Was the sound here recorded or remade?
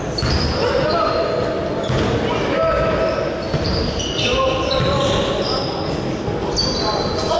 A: recorded